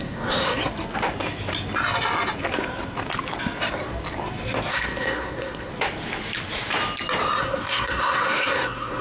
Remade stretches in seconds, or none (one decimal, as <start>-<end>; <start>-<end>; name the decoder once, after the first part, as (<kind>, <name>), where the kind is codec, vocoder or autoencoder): 0.0-0.6 (codec, SNAC); 4.7-5.7; 7.4-9.0